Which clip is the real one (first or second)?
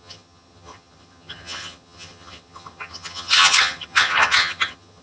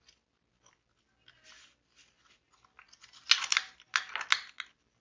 second